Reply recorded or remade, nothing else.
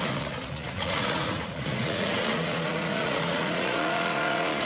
remade